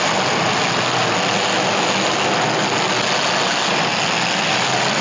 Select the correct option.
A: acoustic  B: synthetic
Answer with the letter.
A